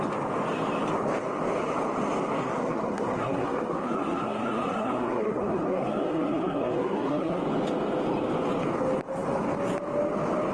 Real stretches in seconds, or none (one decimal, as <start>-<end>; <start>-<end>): 0.0-2.4; 7.4-10.5